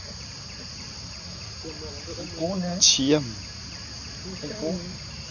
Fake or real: real